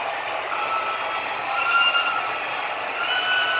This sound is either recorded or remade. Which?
remade